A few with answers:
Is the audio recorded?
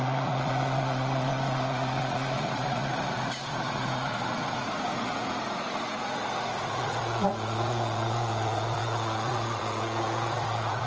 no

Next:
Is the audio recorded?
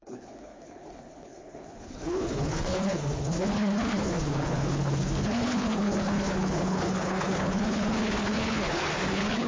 no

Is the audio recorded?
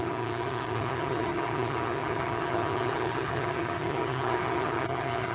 no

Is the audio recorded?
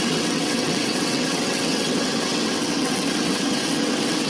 no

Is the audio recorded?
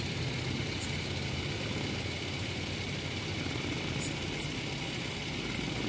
yes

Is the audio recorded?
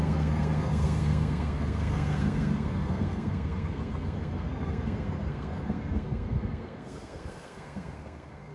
no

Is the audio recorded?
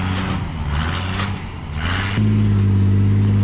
yes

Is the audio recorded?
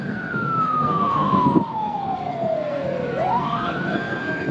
no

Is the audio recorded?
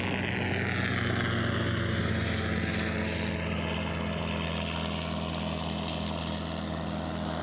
yes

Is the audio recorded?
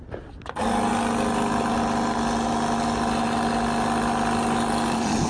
yes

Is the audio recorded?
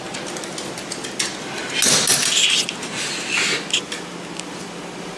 yes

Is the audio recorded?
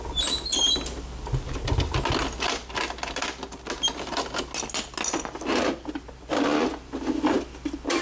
yes